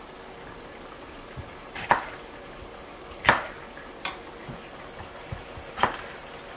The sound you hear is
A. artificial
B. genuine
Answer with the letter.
B